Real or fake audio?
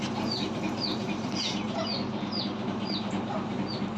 real